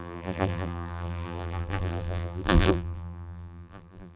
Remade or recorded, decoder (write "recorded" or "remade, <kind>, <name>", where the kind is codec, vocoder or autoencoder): remade, vocoder, BigVGAN v2